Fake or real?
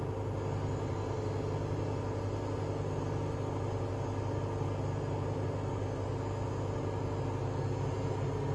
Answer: real